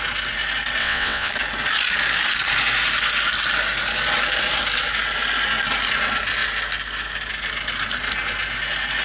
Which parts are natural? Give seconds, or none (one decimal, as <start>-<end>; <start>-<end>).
0.0-0.8; 1.3-9.0